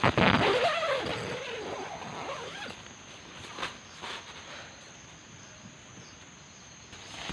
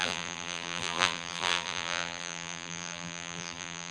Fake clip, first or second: second